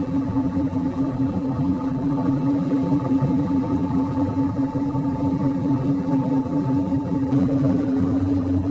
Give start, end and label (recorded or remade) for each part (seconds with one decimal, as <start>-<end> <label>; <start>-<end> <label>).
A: 0.0-8.7 remade